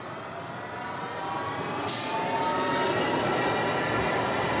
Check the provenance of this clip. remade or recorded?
recorded